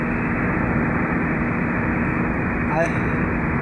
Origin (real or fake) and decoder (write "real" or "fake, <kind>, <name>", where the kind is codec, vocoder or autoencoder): real